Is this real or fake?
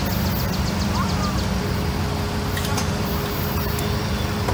real